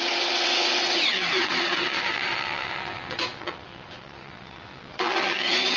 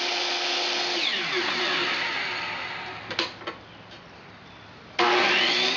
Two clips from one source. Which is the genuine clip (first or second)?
second